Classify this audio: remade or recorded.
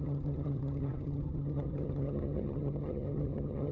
remade